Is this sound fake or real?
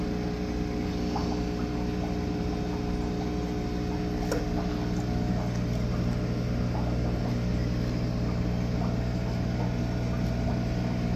real